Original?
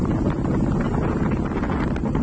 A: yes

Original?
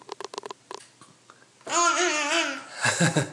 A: yes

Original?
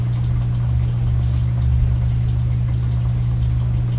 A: yes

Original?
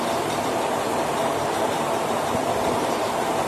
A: no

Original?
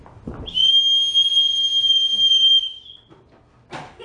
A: yes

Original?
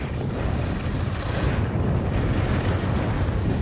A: yes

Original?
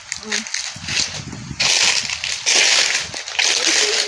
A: yes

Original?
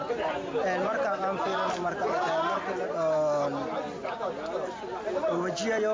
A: yes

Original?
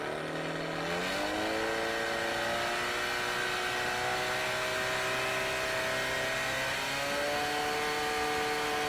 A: yes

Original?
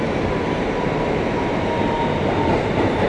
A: no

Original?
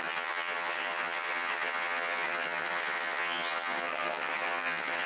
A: no